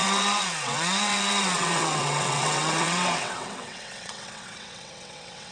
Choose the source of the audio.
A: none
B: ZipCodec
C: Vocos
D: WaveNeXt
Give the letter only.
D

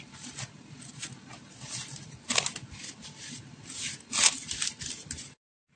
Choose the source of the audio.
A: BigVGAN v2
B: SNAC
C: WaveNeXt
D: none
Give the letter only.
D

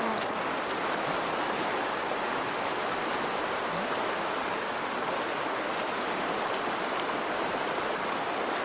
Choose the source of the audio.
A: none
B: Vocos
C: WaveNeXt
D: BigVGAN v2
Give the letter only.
A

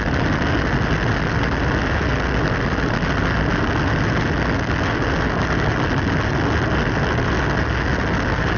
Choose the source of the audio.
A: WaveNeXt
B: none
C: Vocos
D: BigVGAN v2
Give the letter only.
B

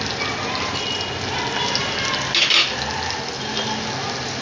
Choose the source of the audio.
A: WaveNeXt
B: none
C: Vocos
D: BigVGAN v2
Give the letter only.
B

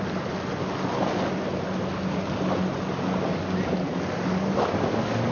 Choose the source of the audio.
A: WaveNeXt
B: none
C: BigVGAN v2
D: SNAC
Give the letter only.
B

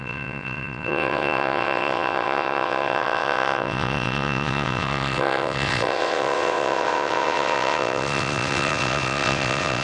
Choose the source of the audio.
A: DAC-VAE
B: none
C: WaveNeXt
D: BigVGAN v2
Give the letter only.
C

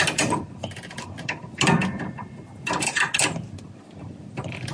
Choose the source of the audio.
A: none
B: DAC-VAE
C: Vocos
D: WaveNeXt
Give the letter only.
A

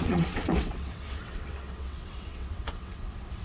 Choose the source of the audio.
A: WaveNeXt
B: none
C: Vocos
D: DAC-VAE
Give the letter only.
A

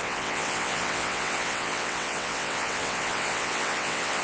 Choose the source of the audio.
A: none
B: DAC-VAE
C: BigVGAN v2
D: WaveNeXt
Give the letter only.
D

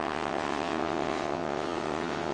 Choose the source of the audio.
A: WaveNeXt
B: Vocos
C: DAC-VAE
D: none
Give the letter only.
A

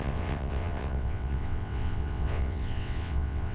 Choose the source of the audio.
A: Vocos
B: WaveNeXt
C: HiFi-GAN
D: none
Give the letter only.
B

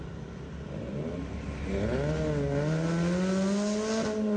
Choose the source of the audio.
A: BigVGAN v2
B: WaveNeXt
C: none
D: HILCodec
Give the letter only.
C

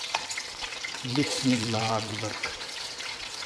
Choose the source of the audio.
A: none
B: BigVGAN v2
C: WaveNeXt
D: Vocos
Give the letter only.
C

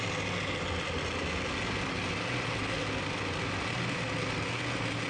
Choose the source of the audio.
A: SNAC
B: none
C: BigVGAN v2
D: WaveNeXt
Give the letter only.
B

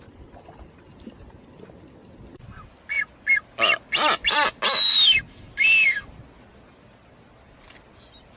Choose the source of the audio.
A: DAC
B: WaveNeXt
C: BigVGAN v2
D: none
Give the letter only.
D